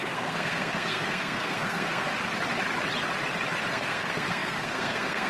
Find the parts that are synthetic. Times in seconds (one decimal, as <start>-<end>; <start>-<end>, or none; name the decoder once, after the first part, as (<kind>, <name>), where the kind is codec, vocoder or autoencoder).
0.0-2.1 (codec, SNAC); 3.7-5.3